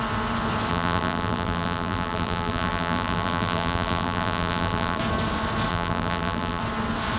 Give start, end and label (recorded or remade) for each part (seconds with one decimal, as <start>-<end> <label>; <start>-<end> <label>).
0.0-0.7 recorded; 0.7-5.0 remade; 5.0-5.7 recorded; 5.7-6.6 remade; 6.6-7.2 recorded